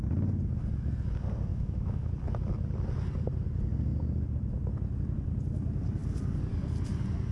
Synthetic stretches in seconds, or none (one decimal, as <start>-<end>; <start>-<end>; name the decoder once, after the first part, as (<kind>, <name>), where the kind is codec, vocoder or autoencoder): 1.5-2.1 (autoencoder, DAC-VAE)